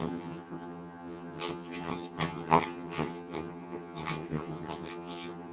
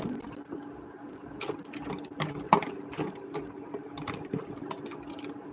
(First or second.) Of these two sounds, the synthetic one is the first